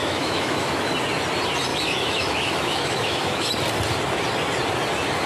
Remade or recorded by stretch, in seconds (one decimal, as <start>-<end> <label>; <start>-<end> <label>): 0.0-0.9 remade; 0.9-1.7 recorded; 1.7-3.5 remade; 3.5-5.3 recorded